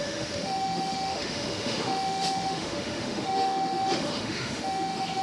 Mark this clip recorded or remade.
remade